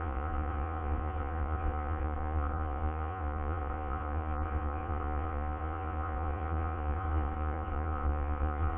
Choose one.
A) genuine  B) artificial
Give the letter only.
B